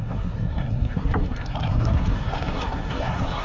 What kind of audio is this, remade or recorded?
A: remade